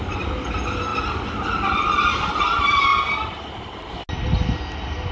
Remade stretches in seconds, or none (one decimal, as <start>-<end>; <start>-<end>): none